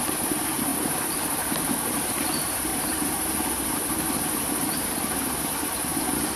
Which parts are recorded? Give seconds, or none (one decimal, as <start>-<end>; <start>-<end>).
5.9-6.4